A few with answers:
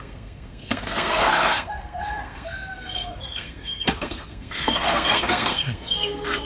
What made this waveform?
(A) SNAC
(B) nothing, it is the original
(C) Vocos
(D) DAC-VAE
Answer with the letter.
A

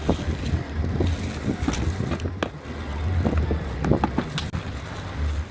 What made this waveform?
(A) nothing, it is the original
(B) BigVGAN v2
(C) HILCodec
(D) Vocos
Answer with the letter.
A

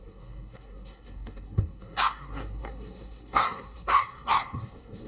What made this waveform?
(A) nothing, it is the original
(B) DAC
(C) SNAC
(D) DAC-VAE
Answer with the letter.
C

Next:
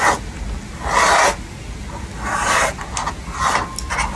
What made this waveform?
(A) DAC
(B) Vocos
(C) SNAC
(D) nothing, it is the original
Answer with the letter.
D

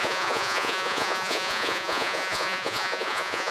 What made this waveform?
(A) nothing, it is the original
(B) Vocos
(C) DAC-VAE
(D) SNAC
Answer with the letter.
B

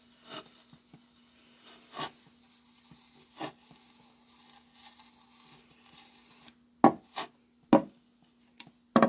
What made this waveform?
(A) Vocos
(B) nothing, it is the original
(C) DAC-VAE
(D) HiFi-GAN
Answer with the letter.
B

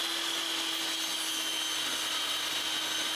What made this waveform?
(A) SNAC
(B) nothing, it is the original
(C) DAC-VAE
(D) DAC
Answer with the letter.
B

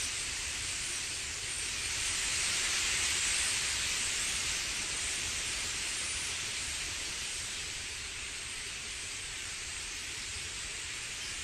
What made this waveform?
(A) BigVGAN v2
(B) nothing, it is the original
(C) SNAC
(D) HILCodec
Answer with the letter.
A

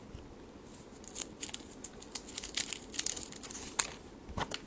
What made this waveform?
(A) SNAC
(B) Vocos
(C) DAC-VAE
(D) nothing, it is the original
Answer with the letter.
D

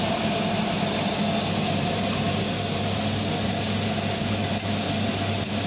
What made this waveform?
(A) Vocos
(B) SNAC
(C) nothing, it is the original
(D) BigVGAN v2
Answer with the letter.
C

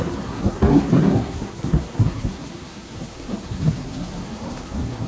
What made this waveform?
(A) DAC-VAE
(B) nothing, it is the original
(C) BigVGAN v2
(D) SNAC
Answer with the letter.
D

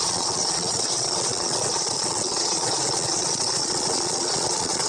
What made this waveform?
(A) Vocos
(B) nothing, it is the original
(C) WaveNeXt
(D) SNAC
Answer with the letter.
A